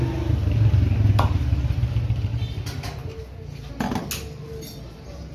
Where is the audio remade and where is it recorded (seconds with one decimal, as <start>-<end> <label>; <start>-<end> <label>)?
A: 0.0-5.3 recorded